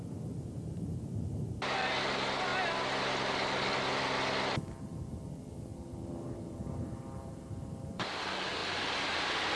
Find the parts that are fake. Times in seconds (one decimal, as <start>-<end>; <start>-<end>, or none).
5.7-8.2; 8.6-9.5